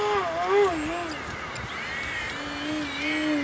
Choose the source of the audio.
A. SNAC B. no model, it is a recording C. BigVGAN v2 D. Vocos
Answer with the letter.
B